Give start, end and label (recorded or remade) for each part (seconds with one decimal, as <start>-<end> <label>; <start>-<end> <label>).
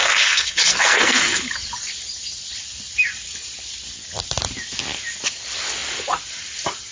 0.0-1.4 remade; 1.4-6.9 recorded